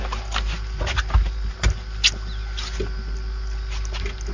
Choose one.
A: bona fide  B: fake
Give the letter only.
A